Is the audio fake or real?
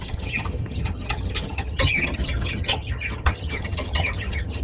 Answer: fake